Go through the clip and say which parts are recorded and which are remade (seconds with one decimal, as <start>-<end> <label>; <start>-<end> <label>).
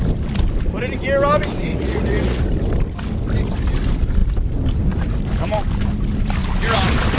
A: 0.0-1.7 recorded; 1.7-2.4 remade; 2.4-7.2 recorded